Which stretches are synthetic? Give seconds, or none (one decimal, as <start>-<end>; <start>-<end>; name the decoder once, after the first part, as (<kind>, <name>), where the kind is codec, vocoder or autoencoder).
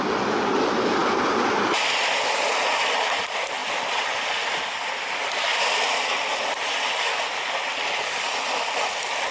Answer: none